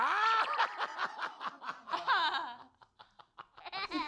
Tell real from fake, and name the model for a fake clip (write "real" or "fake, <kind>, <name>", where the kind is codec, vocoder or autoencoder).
real